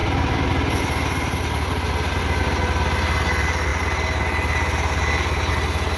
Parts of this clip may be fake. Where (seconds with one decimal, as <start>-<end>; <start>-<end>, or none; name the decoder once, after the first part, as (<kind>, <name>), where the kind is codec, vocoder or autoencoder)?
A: none